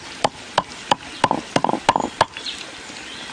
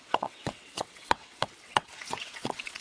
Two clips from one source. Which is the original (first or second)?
first